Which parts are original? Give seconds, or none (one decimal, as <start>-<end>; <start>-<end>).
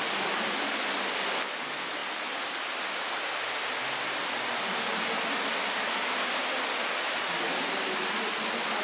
0.0-8.8